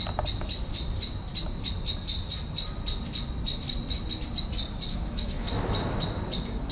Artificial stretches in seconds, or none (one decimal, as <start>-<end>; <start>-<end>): 4.9-5.7